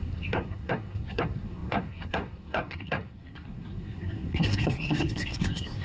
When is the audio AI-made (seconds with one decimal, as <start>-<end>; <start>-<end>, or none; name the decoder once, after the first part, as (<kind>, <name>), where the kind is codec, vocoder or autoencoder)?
0.0-5.8 (codec, SNAC)